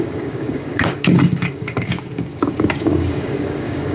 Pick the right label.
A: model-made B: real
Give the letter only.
A